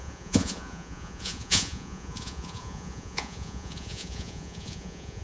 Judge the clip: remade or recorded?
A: remade